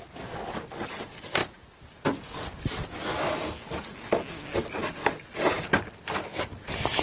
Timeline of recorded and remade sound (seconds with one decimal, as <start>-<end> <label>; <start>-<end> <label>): 0.0-7.0 recorded